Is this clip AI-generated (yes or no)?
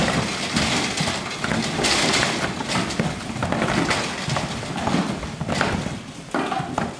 no